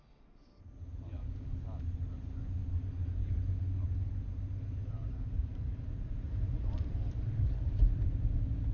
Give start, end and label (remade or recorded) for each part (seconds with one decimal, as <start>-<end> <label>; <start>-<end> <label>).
0.0-2.6 recorded; 2.6-3.2 remade; 3.2-5.0 recorded; 5.0-8.2 remade; 8.2-8.7 recorded